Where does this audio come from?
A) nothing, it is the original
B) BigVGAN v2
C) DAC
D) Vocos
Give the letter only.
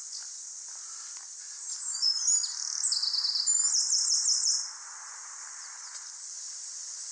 B